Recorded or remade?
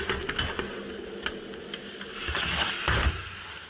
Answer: recorded